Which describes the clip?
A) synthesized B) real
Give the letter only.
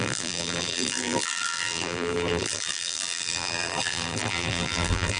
A